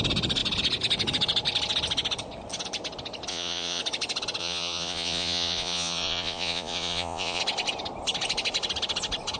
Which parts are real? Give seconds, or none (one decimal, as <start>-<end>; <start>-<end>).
0.0-3.3; 3.8-4.4; 7.4-9.4